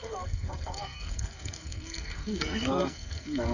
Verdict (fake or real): fake